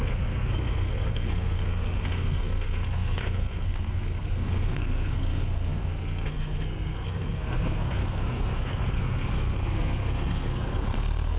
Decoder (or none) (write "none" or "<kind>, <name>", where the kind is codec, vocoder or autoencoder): codec, SNAC